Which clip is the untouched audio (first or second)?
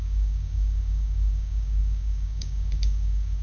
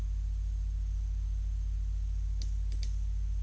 second